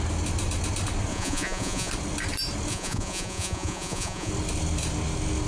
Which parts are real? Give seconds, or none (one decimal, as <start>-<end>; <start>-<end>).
0.0-1.1; 1.9-2.7; 4.3-5.5